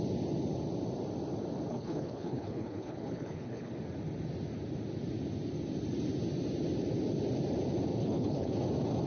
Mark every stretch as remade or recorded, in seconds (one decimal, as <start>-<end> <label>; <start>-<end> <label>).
0.0-1.7 recorded; 1.7-3.7 remade; 3.7-8.0 recorded; 8.0-8.5 remade; 8.5-9.1 recorded